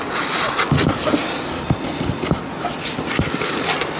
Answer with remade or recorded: recorded